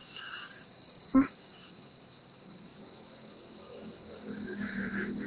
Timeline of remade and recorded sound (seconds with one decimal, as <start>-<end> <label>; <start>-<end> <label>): 0.0-5.3 remade